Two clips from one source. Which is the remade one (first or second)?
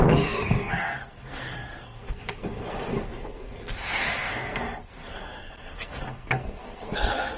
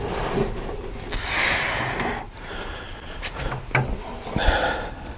first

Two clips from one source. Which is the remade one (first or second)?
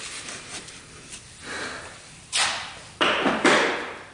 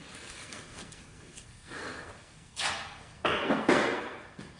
second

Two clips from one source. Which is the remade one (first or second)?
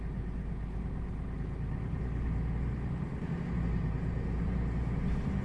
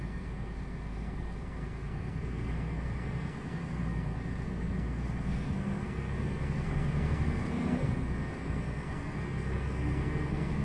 second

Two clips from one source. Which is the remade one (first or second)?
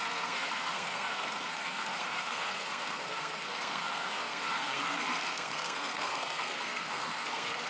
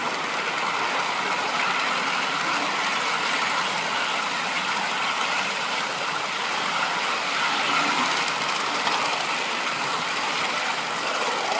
first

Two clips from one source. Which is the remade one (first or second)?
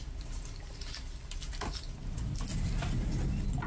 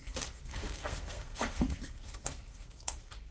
second